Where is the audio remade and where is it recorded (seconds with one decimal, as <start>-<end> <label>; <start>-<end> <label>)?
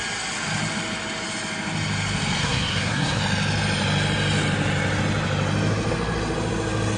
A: 0.0-2.4 recorded; 2.4-3.2 remade; 3.2-7.0 recorded